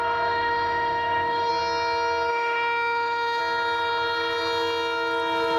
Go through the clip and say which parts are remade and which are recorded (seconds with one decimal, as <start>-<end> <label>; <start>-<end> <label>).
0.0-1.5 remade; 1.5-2.3 recorded; 2.3-3.4 remade; 3.4-5.6 recorded

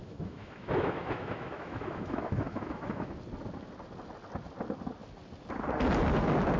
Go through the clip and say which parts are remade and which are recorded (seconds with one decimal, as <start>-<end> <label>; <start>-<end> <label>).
0.0-3.1 remade; 3.1-6.6 recorded

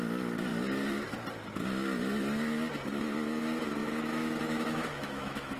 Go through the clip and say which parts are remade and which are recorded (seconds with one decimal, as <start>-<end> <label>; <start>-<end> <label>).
0.0-3.8 recorded; 3.8-5.6 remade

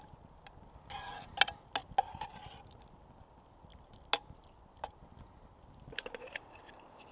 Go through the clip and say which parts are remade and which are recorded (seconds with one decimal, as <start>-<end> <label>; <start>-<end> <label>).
0.0-7.1 recorded